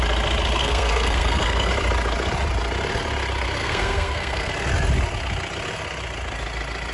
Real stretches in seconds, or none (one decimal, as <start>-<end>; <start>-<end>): 0.0-0.6; 1.7-3.6; 4.5-6.9